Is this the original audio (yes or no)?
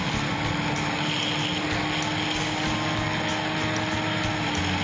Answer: yes